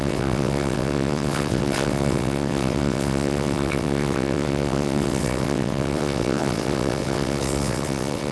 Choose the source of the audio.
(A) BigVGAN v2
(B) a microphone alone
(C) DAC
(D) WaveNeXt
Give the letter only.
D